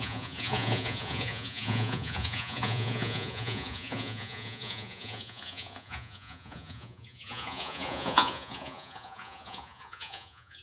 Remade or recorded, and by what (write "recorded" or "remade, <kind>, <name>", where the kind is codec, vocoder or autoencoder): remade, vocoder, Vocos